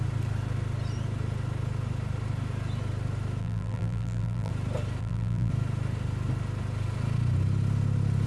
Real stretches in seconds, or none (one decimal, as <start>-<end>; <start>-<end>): 0.0-3.4; 4.5-5.0; 5.5-8.3